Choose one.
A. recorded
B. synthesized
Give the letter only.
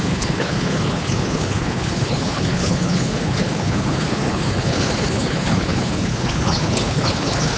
B